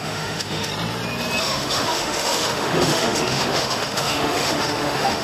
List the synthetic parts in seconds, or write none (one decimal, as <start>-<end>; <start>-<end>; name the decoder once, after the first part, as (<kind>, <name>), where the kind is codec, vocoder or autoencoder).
0.0-0.7 (autoencoder, DAC-VAE); 1.4-5.2